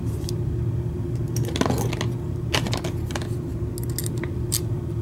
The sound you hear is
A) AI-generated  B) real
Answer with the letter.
B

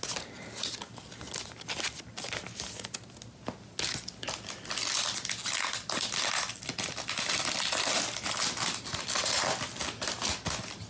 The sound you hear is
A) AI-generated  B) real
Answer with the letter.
B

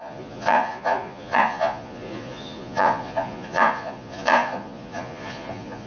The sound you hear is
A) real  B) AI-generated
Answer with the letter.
B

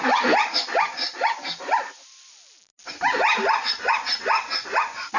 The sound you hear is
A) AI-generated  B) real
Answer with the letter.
B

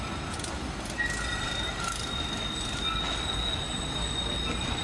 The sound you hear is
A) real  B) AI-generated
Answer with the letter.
A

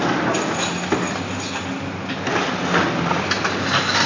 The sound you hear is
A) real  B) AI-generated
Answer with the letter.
A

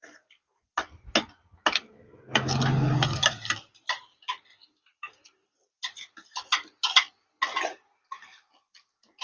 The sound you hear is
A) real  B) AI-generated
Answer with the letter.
A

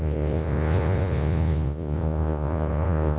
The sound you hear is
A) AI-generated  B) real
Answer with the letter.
A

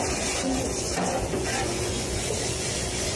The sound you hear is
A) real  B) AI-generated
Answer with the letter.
B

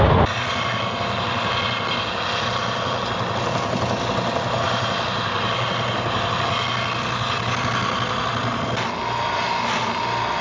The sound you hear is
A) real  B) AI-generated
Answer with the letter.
A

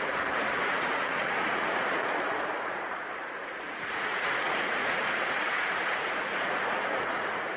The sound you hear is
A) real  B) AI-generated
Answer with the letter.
B